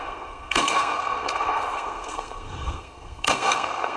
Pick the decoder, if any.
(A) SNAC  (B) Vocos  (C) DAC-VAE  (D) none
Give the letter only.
A